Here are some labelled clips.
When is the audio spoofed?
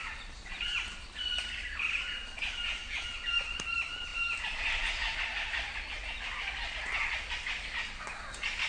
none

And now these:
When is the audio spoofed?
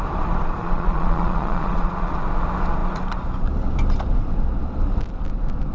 0.6-2.1 (vocoder, Vocos)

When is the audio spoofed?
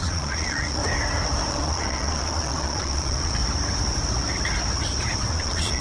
0.0-0.8 (vocoder, Vocos); 1.5-3.4; 5.3-5.8